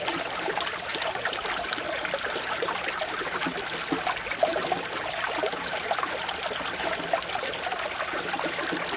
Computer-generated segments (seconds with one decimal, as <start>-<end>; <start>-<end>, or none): none